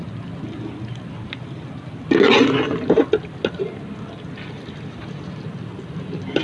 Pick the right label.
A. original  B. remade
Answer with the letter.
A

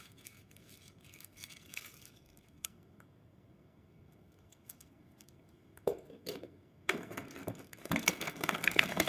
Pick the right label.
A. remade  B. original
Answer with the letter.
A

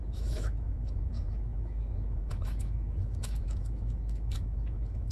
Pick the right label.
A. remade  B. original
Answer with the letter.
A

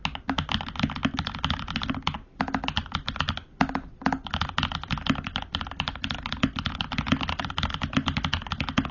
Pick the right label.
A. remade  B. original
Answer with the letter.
B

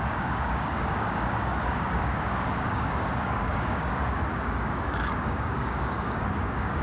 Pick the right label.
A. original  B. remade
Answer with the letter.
B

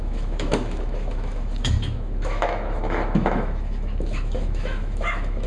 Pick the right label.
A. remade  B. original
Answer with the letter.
A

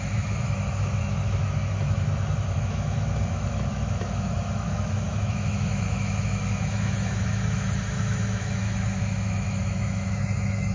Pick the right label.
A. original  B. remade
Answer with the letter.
B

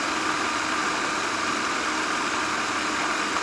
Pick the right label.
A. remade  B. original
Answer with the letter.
B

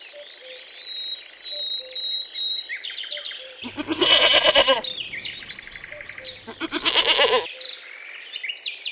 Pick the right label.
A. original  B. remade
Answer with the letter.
B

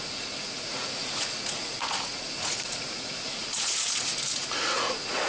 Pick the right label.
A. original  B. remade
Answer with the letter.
B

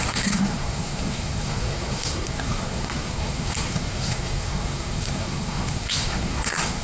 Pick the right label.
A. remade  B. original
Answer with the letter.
A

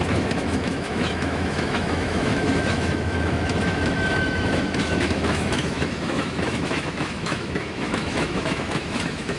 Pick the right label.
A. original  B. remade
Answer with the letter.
B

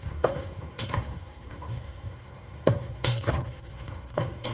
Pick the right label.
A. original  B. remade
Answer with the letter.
B